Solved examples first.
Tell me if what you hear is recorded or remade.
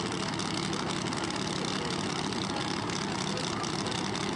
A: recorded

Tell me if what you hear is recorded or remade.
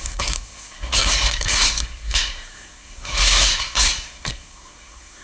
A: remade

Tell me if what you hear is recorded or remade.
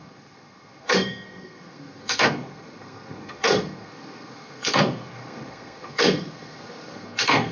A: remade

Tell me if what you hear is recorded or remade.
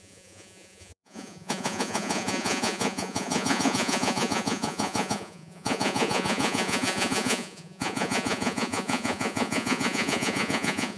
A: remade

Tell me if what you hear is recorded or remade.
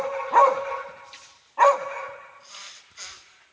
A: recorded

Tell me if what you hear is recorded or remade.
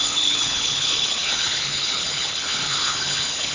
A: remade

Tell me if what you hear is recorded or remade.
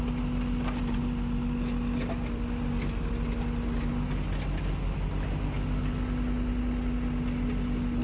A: recorded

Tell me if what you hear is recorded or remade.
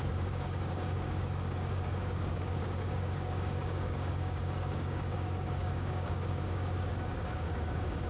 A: remade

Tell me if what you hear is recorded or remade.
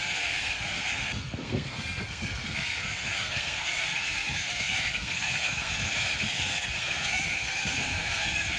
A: remade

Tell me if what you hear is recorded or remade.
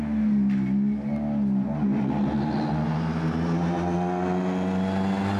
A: recorded